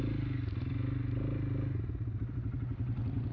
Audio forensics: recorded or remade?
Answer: recorded